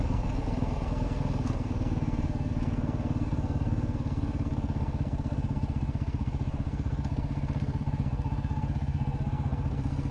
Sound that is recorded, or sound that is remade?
remade